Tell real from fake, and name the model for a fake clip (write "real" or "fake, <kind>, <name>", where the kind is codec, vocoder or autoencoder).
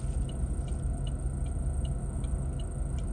real